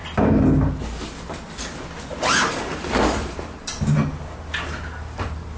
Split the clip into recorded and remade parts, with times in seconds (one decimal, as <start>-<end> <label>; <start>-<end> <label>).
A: 0.0-5.6 recorded